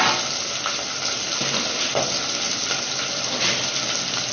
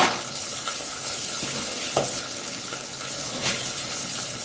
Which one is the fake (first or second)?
second